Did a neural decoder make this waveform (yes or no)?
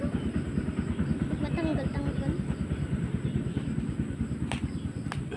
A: no